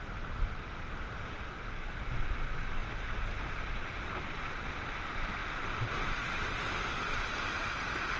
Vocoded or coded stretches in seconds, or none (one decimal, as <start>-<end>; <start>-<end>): 0.0-0.9; 1.5-2.8; 4.0-8.2